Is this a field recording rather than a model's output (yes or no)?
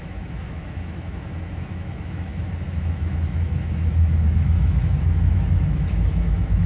no